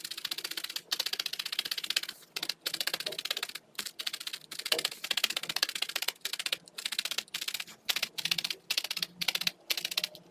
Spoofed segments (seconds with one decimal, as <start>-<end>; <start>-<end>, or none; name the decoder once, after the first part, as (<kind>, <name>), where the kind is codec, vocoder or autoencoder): none